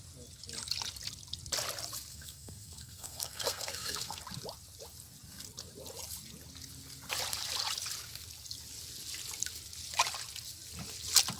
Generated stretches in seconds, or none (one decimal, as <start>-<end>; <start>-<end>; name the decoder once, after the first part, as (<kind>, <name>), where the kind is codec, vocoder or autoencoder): 2.1-4.2 (codec, SNAC)